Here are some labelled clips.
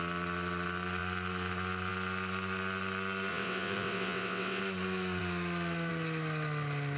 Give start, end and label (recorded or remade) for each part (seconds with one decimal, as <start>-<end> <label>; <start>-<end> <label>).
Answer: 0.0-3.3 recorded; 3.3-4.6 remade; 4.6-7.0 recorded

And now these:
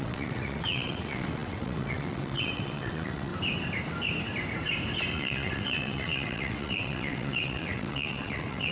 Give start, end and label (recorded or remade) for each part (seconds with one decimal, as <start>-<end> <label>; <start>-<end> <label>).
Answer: 0.0-3.3 remade; 3.3-5.1 recorded; 5.1-8.7 remade

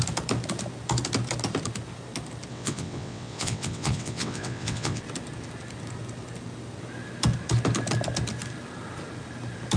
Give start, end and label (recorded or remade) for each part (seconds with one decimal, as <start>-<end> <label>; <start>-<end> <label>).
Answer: 0.0-2.5 recorded; 2.5-5.0 remade; 5.0-9.8 recorded

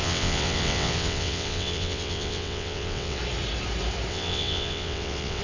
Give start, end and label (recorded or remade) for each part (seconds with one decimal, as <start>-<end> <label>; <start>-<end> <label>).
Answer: 0.0-3.2 remade; 3.2-4.1 recorded; 4.1-5.4 remade